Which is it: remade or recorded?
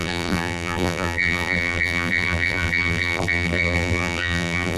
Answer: remade